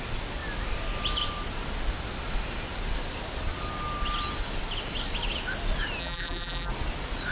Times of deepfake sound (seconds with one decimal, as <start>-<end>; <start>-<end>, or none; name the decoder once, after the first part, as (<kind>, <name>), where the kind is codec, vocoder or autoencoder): 6.0-6.7 (vocoder, BigVGAN v2)